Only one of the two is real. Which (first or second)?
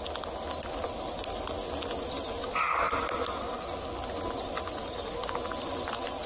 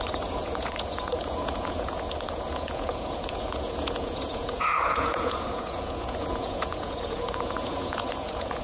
first